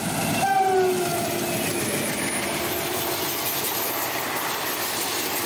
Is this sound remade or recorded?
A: recorded